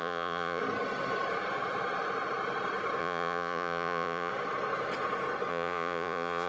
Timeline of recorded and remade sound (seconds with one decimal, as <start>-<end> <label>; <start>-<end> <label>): 0.0-0.6 remade; 0.6-3.0 recorded; 3.0-4.3 remade; 4.3-5.5 recorded; 5.5-6.5 remade